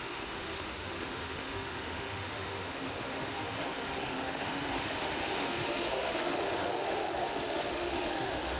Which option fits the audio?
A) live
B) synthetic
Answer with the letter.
B